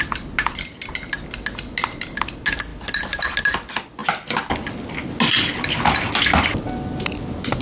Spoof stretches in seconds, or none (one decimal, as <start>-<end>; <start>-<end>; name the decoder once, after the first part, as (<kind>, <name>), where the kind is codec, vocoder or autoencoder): none